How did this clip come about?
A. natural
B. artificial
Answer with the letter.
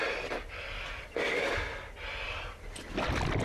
A